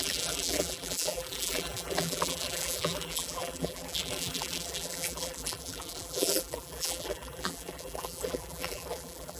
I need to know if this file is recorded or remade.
remade